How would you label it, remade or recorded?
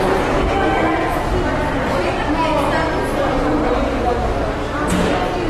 recorded